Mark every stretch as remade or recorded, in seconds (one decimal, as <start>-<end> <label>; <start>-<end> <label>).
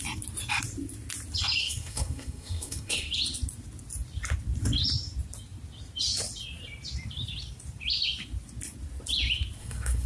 0.0-1.6 recorded; 1.6-3.1 remade; 3.1-9.6 recorded; 9.6-10.1 remade